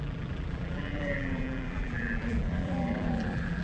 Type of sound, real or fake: fake